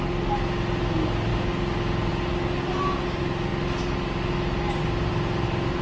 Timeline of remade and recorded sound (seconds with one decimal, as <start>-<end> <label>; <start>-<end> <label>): 0.0-5.8 recorded